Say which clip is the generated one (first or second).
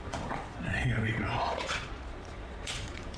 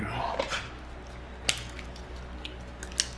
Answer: first